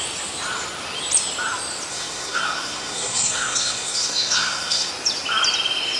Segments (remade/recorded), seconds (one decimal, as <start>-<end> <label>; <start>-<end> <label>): 0.0-1.9 recorded; 1.9-4.9 remade; 4.9-6.0 recorded